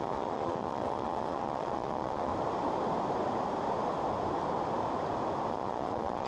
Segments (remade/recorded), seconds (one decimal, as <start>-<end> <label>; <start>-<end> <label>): 0.0-2.3 remade; 2.3-5.5 recorded; 5.5-6.3 remade